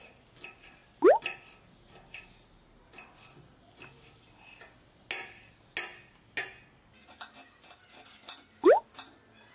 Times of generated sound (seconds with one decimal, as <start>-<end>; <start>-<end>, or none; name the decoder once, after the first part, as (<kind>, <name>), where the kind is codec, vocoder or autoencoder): none